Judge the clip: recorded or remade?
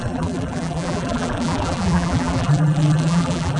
remade